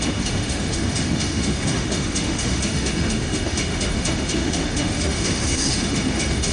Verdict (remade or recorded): remade